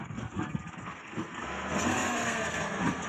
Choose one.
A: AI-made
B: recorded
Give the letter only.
A